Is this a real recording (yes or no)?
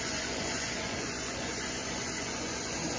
no